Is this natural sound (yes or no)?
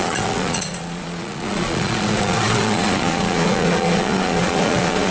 no